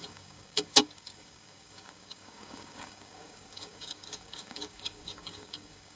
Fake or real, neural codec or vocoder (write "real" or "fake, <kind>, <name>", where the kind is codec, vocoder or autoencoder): fake, codec, DAC